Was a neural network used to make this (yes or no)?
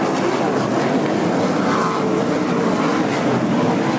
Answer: no